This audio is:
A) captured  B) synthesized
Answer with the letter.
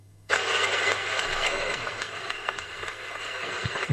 B